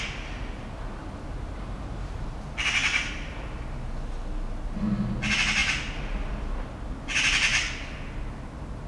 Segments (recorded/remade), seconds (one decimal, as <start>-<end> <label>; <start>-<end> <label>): 0.0-8.9 recorded